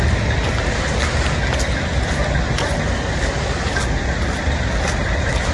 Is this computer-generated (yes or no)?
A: no